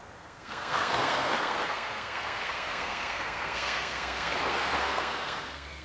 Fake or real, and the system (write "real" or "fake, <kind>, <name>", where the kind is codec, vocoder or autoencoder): fake, codec, SNAC